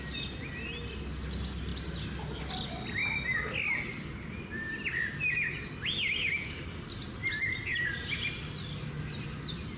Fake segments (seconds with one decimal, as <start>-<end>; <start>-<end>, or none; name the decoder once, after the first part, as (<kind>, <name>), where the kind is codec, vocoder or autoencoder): none